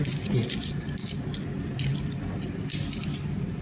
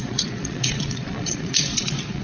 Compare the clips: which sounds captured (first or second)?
first